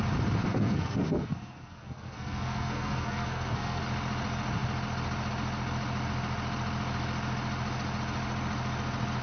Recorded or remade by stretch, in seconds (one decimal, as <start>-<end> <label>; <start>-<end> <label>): 0.0-0.4 recorded; 0.4-3.8 remade; 3.8-9.2 recorded